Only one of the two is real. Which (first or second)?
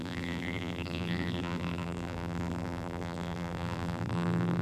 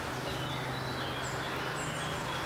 second